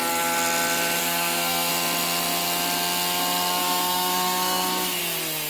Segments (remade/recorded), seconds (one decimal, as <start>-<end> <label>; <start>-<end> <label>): 0.0-1.0 recorded; 1.0-1.7 remade; 1.7-3.6 recorded; 3.6-5.0 remade; 5.0-5.5 recorded